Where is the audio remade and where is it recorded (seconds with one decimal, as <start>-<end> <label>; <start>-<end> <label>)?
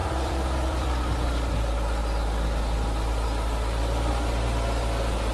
0.0-1.5 remade; 1.5-5.3 recorded